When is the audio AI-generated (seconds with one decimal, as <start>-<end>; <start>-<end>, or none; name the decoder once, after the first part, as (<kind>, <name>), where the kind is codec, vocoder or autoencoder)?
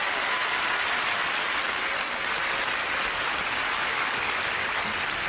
3.9-4.8 (codec, DAC)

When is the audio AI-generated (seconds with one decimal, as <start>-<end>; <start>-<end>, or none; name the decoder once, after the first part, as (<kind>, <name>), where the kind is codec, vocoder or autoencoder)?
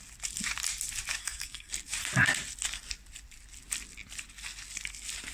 1.2-1.7 (codec, SNAC)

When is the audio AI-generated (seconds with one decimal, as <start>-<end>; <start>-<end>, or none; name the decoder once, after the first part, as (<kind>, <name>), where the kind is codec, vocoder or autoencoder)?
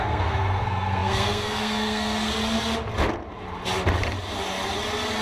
0.0-2.3 (codec, SNAC)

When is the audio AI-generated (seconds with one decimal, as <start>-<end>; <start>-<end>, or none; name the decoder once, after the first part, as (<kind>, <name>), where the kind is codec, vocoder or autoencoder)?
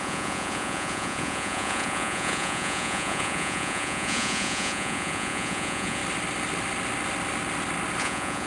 0.0-6.0 (vocoder, Vocos); 8.0-8.5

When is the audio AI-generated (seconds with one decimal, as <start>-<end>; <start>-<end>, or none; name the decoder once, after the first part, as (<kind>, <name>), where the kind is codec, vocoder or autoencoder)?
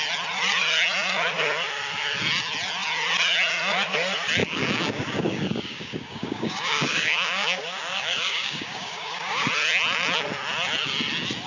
4.4-9.5 (codec, DAC)